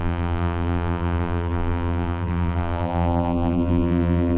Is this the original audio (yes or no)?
no